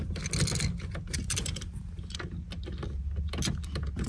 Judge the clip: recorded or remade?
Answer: recorded